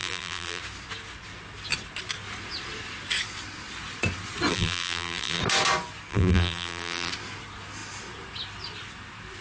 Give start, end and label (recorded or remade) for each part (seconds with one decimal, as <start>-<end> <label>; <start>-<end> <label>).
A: 0.0-0.6 remade; 0.6-4.5 recorded; 4.5-5.4 remade; 5.4-6.1 recorded; 6.1-7.1 remade; 7.1-9.4 recorded